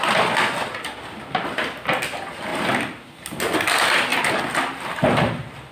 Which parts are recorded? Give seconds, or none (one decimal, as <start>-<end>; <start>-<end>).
0.0-5.7